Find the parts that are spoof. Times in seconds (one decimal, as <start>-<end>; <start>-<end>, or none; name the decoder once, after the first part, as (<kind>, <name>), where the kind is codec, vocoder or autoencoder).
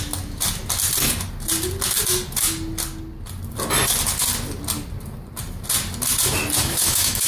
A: 6.6-7.3 (autoencoder, DAC-VAE)